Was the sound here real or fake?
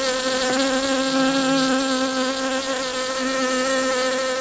real